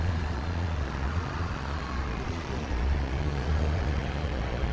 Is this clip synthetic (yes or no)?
yes